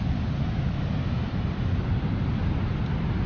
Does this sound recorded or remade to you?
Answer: recorded